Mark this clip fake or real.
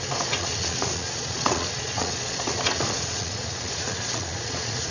fake